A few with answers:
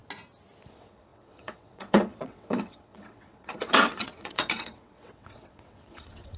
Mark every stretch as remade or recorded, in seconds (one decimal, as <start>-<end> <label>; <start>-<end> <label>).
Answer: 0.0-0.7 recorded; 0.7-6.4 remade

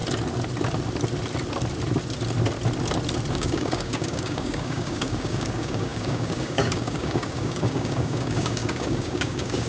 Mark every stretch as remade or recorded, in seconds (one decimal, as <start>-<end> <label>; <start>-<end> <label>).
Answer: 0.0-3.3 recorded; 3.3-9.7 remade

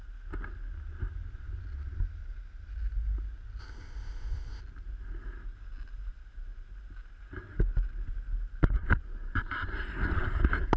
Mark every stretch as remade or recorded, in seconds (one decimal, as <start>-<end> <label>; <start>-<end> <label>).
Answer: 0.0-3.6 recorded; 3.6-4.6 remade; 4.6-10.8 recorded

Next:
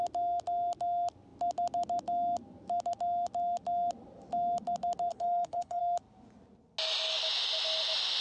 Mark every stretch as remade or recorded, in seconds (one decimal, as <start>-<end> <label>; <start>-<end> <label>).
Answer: 0.0-5.1 recorded; 5.1-5.8 remade; 5.8-8.2 recorded

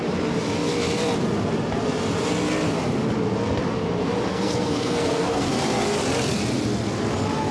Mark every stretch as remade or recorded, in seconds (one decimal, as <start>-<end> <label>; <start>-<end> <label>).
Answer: 0.0-4.3 recorded; 4.3-5.5 remade; 5.5-7.5 recorded